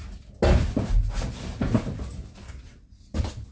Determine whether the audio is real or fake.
real